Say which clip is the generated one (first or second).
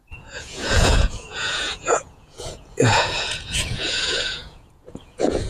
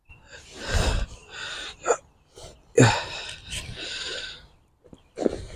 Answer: first